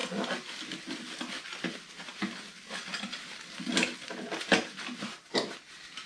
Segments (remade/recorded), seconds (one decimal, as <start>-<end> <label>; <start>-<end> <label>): 0.0-6.1 recorded